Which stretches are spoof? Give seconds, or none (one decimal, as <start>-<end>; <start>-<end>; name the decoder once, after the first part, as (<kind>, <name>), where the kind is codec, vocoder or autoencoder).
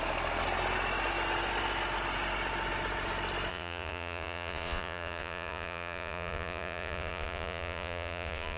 3.5-8.6 (vocoder, Vocos)